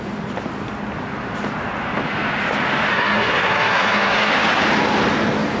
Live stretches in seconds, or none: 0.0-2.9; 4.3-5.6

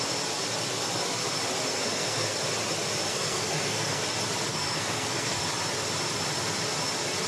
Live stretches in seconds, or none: 0.0-1.7; 2.4-3.1; 4.0-4.5; 5.4-7.3

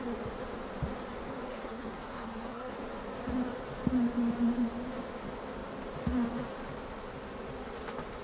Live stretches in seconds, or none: 0.0-1.5; 2.7-8.2

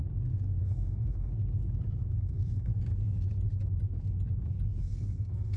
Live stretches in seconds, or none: 0.0-0.6; 1.3-2.2; 2.7-4.8